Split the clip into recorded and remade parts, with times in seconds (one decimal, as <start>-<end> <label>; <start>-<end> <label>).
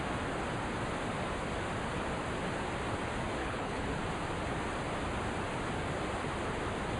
0.0-3.4 recorded; 3.4-4.0 remade; 4.0-7.0 recorded